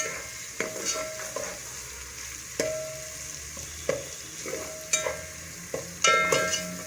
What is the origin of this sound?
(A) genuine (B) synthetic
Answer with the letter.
A